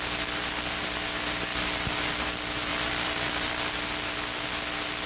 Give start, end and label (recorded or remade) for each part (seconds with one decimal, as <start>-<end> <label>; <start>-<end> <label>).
0.0-1.5 recorded; 1.5-2.3 remade; 2.3-2.7 recorded; 2.7-3.7 remade; 3.7-5.1 recorded